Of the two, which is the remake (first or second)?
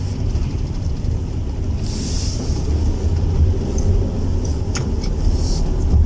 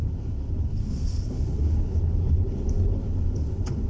second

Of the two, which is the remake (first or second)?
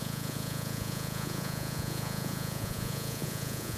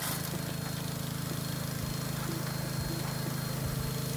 first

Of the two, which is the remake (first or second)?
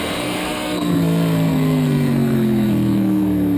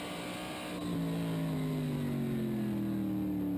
first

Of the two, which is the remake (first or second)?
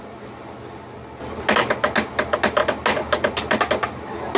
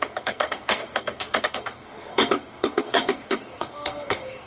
second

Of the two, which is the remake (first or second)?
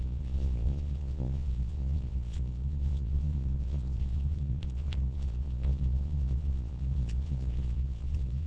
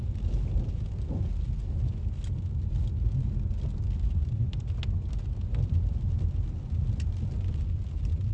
first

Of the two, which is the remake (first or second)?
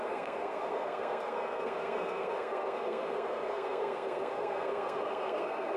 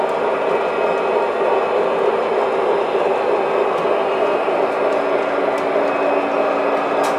first